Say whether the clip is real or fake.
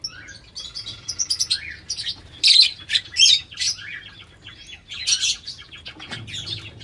real